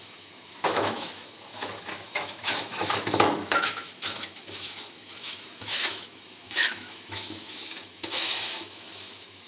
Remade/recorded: remade